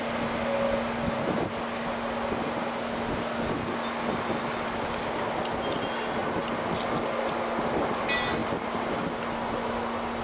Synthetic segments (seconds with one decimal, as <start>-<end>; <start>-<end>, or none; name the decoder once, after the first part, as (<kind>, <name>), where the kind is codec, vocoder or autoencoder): none